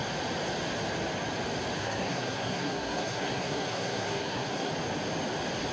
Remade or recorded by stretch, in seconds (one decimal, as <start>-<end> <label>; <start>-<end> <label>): 0.0-1.8 recorded; 1.8-4.7 remade; 4.7-5.7 recorded